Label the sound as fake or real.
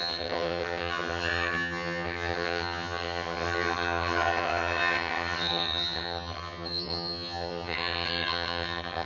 fake